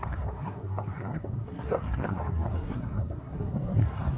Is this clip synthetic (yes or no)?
yes